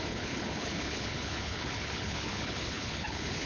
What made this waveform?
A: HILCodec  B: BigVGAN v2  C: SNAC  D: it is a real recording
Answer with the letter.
A